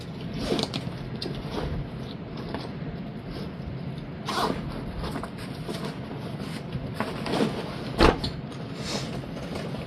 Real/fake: real